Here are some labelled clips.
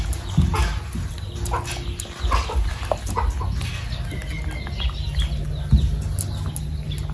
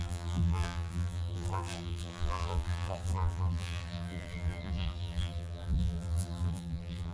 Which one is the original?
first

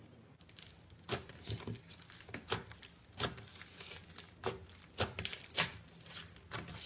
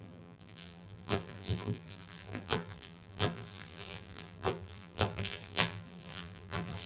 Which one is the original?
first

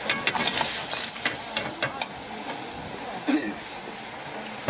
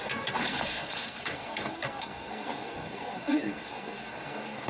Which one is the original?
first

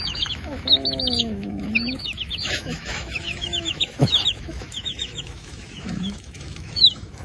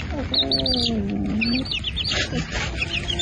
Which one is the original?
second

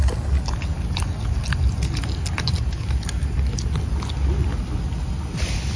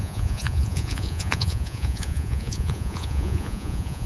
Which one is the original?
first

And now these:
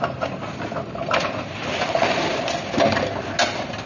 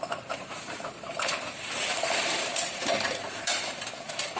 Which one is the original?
first